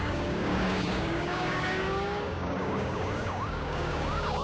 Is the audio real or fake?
fake